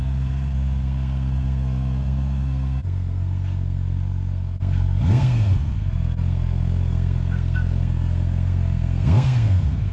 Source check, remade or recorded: remade